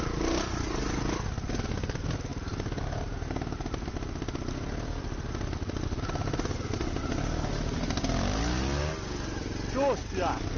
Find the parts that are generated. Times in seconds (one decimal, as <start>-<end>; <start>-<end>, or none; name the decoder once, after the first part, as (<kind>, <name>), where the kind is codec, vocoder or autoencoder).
none